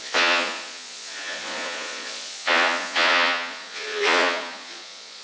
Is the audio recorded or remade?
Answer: remade